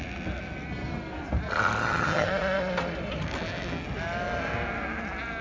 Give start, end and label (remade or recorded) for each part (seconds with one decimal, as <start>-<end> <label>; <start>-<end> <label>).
0.0-1.8 recorded; 1.8-2.3 remade; 2.3-5.4 recorded